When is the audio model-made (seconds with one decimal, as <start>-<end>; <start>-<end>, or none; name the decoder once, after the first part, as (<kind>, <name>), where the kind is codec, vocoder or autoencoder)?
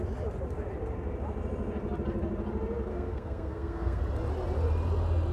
2.9-4.0 (codec, SNAC)